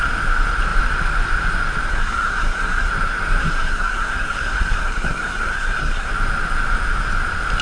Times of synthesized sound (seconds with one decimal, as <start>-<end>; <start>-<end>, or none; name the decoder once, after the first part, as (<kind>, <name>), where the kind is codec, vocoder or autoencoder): 1.9-2.9 (codec, SNAC); 3.4-6.1